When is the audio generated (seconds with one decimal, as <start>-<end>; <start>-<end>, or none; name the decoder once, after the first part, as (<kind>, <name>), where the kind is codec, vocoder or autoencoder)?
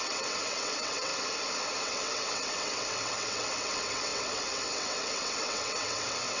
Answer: 0.0-1.1 (vocoder, WaveNeXt); 1.8-6.4